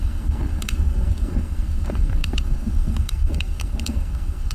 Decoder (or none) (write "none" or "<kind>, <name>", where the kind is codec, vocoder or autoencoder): codec, SNAC